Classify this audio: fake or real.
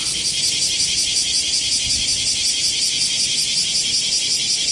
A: real